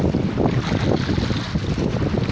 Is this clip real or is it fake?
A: real